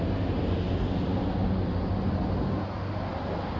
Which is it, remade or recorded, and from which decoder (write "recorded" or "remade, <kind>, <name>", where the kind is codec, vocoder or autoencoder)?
recorded